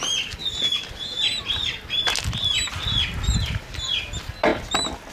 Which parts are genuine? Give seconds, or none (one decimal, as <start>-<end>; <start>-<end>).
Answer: 0.0-5.1

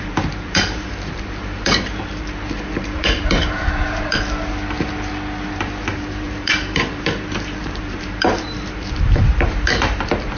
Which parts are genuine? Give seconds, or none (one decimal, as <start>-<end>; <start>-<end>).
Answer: 4.1-5.5

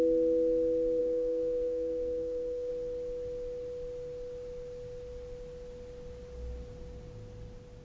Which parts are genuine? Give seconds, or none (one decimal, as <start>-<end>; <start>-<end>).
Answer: 0.0-1.0; 2.7-7.8

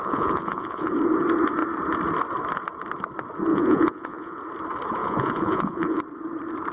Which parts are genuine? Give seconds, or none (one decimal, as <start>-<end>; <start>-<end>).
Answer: 0.9-3.5; 4.4-5.0; 6.0-6.7

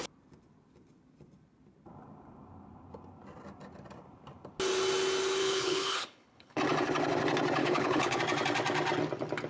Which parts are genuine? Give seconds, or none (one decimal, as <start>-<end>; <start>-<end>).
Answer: 0.0-5.4; 6.6-7.6; 8.2-9.5

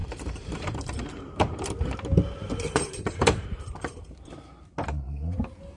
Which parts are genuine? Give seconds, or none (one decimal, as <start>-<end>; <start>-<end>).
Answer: 1.7-2.4; 4.1-5.8

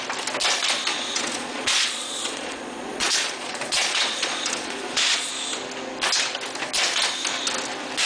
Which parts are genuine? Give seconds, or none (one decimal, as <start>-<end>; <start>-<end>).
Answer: 0.0-0.9; 5.3-8.1